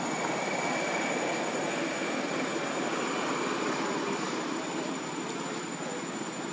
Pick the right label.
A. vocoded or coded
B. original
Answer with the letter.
B